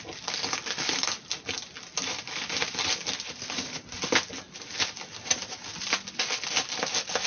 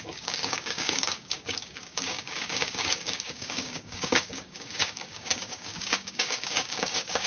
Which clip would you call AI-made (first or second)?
second